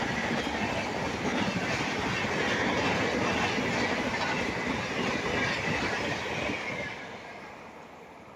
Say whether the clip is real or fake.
real